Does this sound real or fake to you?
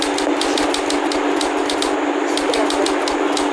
real